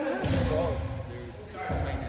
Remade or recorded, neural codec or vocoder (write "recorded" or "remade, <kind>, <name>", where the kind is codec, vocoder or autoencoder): recorded